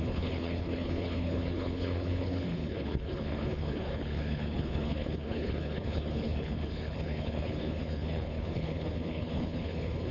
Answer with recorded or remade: remade